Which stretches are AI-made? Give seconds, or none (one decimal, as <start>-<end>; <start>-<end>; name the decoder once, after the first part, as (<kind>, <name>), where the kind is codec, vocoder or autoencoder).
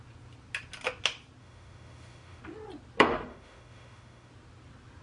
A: 1.4-2.4 (autoencoder, DAC-VAE); 3.3-4.3